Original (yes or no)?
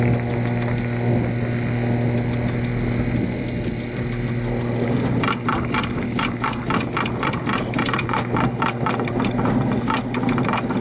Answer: yes